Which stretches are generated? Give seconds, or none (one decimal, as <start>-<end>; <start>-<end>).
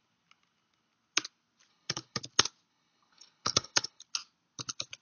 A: 1.7-2.2; 2.7-4.0